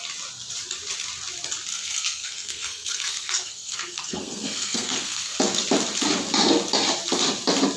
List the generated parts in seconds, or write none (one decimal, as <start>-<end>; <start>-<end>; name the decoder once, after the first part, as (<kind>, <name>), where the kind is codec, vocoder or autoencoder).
1.7-5.4 (codec, SNAC)